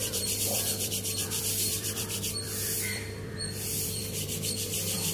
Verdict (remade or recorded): remade